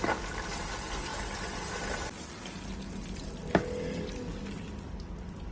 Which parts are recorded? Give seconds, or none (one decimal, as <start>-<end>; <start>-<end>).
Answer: 0.0-5.5